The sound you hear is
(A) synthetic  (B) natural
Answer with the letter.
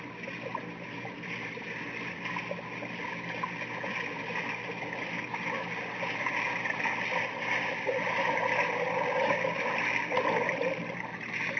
B